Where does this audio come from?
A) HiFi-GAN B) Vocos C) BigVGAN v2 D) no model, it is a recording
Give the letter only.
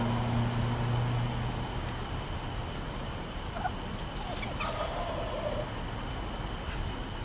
D